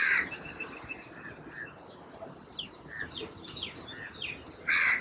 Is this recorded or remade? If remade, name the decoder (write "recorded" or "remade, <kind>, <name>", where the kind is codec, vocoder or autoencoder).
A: recorded